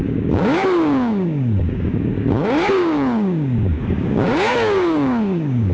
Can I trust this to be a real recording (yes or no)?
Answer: no